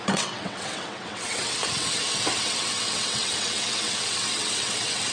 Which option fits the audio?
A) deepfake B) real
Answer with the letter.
A